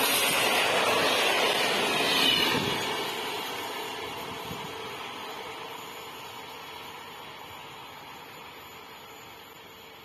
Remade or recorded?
recorded